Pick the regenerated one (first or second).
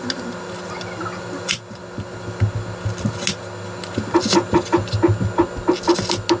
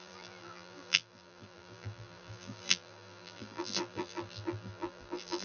second